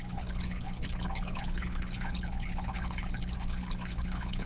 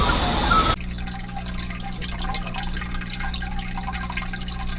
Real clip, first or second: second